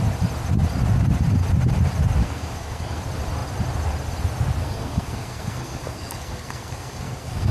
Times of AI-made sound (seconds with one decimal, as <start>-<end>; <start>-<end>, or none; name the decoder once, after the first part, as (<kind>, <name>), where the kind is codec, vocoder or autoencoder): 2.2-3.0 (codec, SNAC); 4.6-7.5